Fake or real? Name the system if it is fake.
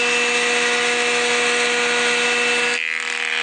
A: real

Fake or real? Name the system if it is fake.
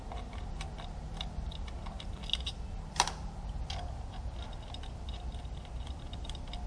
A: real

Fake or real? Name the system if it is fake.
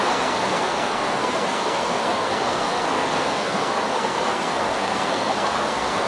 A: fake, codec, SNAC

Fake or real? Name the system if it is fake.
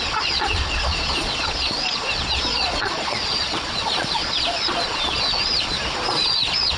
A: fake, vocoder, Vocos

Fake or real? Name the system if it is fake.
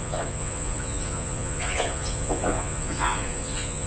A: fake, vocoder, Vocos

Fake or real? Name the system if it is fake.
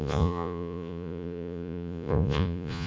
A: fake, vocoder, Vocos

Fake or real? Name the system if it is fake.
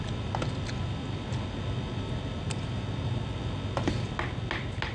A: real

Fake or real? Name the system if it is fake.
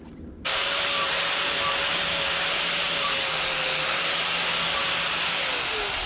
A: real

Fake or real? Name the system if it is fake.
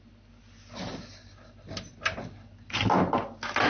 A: real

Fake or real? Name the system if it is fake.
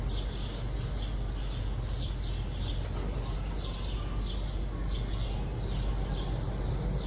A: real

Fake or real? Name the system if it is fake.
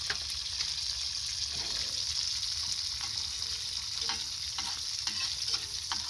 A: real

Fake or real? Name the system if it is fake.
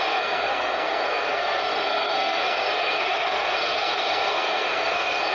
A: fake, codec, SNAC